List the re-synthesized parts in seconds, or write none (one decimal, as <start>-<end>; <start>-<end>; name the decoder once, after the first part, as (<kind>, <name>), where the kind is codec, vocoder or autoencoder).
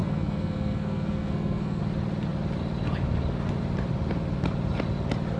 0.0-1.8 (codec, SNAC)